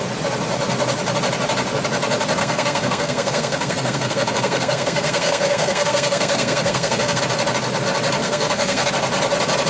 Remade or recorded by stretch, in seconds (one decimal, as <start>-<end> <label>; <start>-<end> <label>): 0.0-2.4 recorded; 2.4-7.2 remade; 7.2-8.2 recorded; 8.2-8.9 remade; 8.9-9.7 recorded